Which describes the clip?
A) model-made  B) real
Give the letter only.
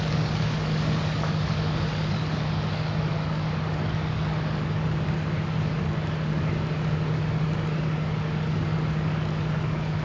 A